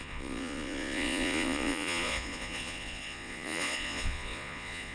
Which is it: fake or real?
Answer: fake